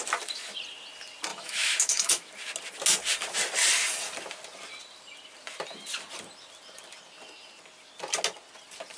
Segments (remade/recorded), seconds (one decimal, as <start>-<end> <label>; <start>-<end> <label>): 0.0-1.3 recorded; 1.3-2.3 remade; 2.3-9.0 recorded